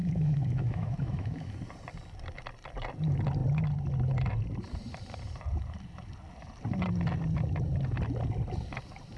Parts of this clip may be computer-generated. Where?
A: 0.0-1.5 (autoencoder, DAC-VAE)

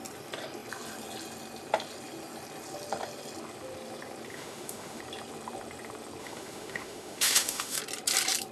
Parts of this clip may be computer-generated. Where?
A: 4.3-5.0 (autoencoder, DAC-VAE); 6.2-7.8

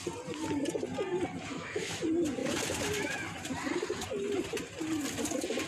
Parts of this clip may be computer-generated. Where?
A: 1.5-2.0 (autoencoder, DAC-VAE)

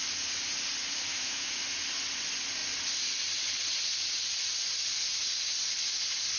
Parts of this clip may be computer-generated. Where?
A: 1.1-1.6 (autoencoder, DAC-VAE)